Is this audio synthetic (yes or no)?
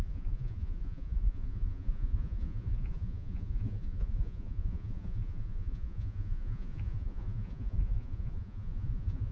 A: yes